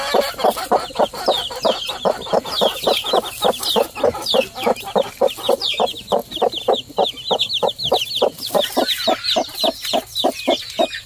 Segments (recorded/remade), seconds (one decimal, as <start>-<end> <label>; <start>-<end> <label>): 0.0-11.1 recorded